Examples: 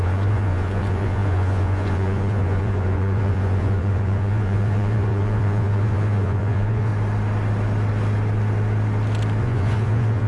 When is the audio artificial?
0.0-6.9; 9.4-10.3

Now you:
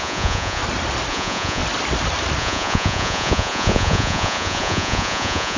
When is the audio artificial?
0.0-0.6; 1.1-1.6; 2.4-5.6